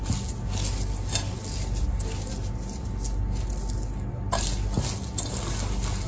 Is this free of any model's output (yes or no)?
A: yes